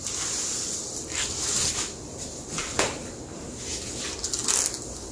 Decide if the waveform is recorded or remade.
recorded